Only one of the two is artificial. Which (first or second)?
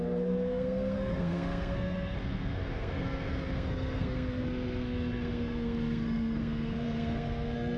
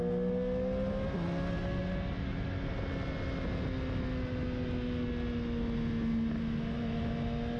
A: first